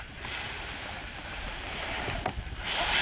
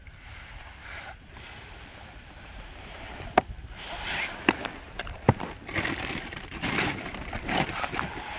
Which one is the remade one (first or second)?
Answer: second